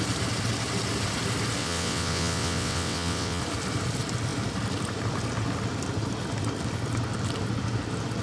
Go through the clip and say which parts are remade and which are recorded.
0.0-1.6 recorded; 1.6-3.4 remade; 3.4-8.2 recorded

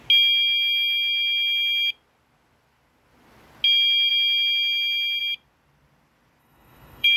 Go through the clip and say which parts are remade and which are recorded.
0.0-6.4 recorded; 6.4-7.2 remade